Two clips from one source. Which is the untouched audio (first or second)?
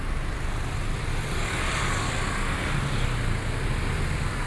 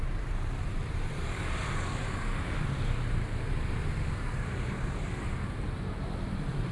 first